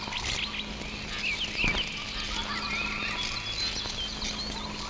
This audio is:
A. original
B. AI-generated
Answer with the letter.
A